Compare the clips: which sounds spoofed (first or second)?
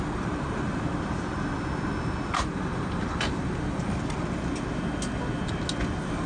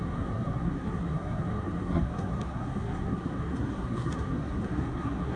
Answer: second